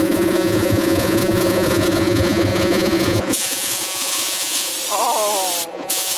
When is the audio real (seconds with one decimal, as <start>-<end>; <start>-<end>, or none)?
4.7-5.7